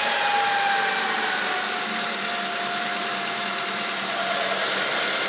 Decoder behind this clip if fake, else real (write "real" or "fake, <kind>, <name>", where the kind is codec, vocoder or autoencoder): real